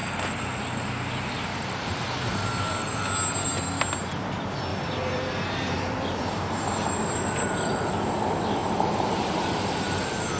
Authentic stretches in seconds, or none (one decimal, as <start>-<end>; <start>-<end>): 0.8-4.7; 7.9-8.6; 10.0-10.4